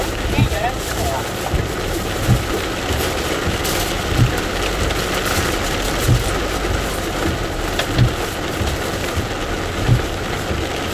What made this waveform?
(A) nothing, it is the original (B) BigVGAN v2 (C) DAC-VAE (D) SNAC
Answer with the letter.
A